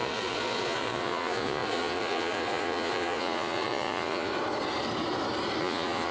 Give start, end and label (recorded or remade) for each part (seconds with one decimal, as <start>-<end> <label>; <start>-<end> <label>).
0.0-4.3 remade; 4.3-5.6 recorded; 5.6-6.1 remade